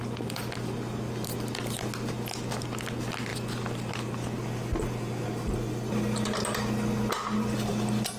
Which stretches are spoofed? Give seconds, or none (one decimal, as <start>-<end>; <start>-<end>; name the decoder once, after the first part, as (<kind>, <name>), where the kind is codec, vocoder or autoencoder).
none